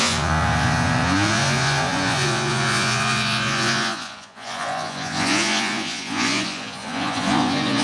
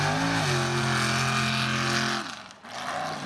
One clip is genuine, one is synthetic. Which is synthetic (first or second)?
first